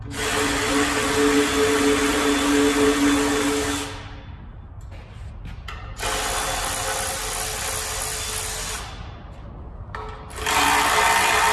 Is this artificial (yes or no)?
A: no